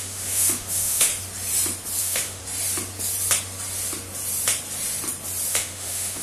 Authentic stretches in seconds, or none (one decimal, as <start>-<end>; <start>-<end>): 1.1-2.0; 2.4-5.5